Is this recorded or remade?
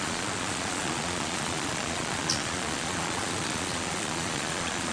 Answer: remade